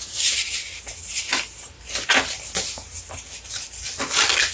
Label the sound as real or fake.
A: real